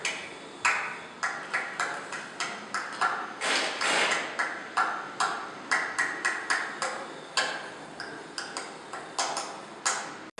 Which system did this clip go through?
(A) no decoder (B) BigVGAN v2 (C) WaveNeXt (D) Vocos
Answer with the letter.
A